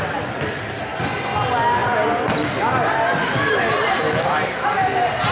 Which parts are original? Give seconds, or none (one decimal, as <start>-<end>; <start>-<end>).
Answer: 0.0-5.3